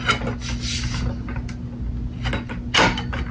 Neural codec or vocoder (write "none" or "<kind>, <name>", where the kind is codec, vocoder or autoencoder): none